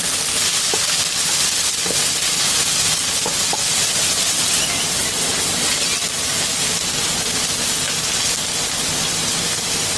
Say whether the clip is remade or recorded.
recorded